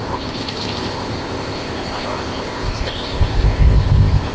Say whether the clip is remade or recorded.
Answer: remade